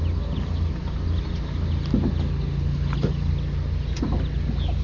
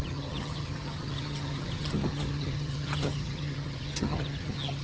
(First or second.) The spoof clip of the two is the second